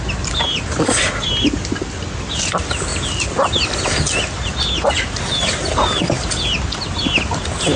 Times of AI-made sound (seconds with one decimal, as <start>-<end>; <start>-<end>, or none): none